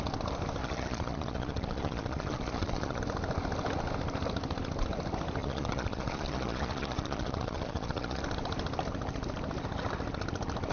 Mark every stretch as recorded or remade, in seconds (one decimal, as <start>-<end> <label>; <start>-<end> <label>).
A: 0.0-0.6 recorded; 0.6-3.0 remade; 3.0-5.4 recorded; 5.4-8.2 remade; 8.2-10.7 recorded